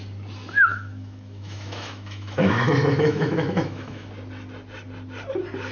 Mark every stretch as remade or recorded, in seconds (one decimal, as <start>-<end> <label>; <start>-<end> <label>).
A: 0.0-0.7 recorded; 0.7-4.1 remade; 4.1-5.7 recorded